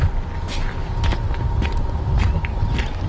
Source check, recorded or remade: recorded